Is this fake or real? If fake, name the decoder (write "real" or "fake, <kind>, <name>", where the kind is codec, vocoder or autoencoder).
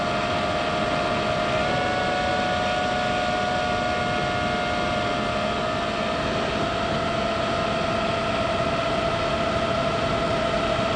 real